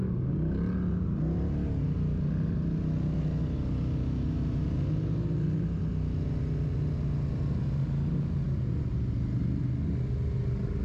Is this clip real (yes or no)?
yes